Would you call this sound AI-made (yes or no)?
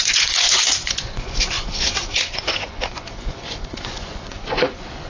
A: yes